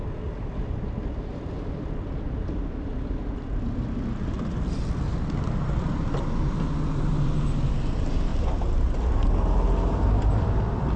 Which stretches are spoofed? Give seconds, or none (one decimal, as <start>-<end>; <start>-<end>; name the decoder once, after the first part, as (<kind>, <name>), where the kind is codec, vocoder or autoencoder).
1.3-2.5 (vocoder, BigVGAN v2)